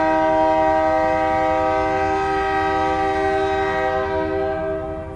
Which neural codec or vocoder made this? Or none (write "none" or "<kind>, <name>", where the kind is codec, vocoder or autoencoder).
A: none